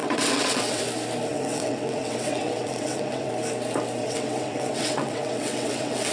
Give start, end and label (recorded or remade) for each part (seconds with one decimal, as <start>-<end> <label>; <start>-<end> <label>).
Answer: 0.0-0.8 remade; 0.8-1.3 recorded; 1.3-3.3 remade; 3.3-4.0 recorded; 4.0-6.1 remade